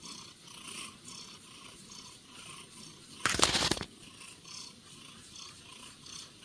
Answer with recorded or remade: recorded